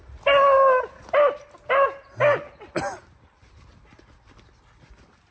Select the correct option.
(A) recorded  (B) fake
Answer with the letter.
A